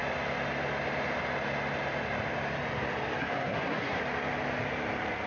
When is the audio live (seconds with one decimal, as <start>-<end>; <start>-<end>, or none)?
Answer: 0.0-3.2; 4.0-5.3